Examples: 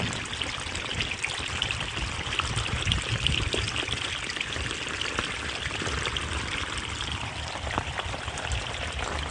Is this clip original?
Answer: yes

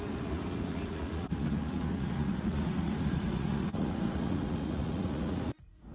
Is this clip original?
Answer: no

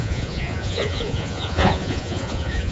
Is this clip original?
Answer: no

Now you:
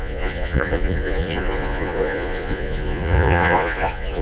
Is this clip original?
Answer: no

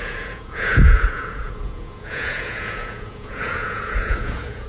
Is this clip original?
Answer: no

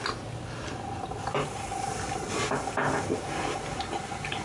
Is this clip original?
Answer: yes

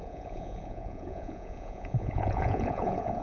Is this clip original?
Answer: no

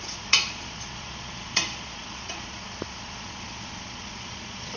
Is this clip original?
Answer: no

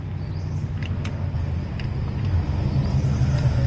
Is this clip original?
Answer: yes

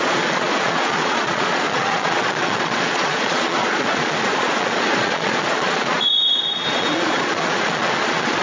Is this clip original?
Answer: no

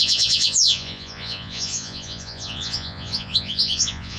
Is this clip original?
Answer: no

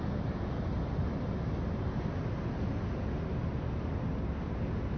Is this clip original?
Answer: yes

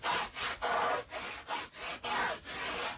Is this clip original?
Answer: yes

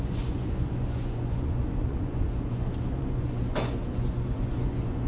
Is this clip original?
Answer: no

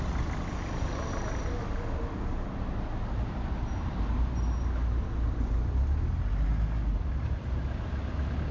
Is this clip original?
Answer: yes